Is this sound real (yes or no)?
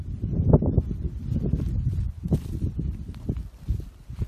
no